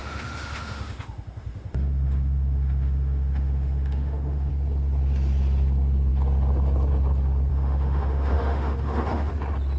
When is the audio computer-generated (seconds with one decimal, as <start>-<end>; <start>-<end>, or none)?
0.0-4.5; 7.5-9.3